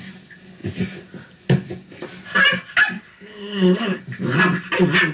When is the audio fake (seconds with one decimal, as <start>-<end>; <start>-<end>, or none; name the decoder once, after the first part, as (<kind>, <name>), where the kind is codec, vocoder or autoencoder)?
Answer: 3.1-4.0 (codec, HILCodec)

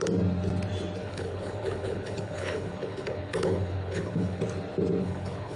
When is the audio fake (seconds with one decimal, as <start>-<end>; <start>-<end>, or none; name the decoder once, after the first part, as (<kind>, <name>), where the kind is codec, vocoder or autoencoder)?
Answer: 1.0-4.4 (codec, HILCodec); 5.0-5.6

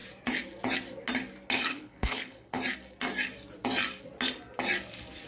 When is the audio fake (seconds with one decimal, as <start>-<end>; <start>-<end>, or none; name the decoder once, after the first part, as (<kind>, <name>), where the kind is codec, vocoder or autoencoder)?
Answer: 1.7-2.6 (codec, HILCodec)